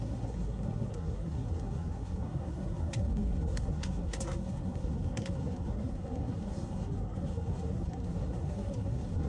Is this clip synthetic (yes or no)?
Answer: yes